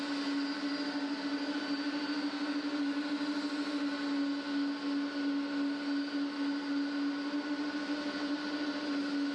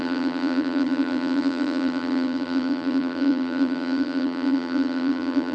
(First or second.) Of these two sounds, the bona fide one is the first